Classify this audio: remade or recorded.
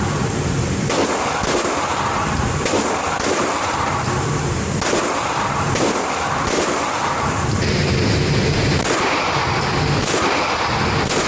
remade